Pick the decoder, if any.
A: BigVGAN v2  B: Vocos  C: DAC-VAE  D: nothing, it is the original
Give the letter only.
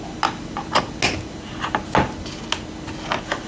D